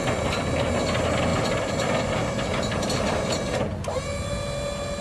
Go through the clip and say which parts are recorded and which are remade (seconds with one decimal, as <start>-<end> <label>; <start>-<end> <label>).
0.0-5.0 recorded